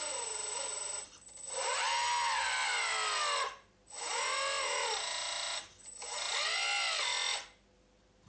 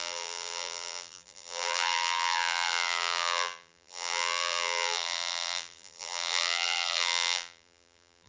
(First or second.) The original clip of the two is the first